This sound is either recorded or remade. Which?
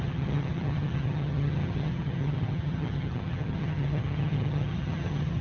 remade